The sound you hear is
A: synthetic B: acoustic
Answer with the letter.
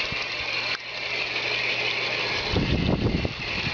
B